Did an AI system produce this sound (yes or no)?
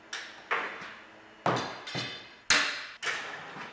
no